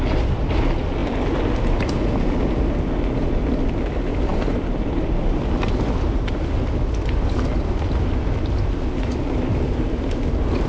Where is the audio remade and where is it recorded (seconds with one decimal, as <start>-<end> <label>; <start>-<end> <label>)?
0.0-10.7 recorded